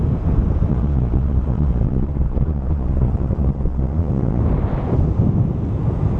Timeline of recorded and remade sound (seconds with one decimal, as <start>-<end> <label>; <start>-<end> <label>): 0.0-0.7 recorded; 0.7-4.4 remade; 4.4-6.2 recorded